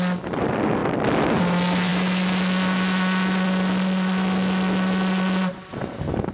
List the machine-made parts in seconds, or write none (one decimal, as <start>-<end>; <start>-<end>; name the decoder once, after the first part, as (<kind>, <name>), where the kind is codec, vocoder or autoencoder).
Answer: none